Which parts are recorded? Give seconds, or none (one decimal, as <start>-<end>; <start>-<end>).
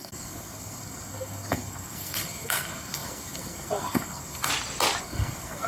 4.5-5.0